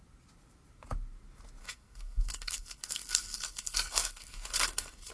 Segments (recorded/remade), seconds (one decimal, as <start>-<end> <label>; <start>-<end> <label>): 0.0-1.6 recorded; 1.6-5.1 remade